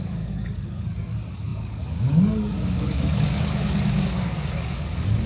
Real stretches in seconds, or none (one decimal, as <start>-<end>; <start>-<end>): none